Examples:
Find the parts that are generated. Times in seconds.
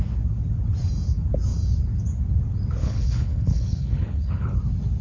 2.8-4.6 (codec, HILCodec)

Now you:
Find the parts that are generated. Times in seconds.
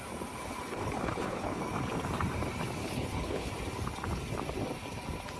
0.7-1.6 (codec, HILCodec); 2.8-3.5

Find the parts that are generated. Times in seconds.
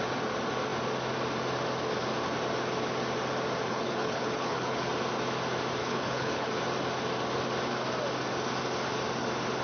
3.7-4.9 (codec, HILCodec); 5.8-6.6